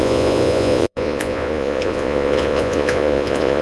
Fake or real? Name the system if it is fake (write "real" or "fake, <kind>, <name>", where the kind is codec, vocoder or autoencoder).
fake, vocoder, Vocos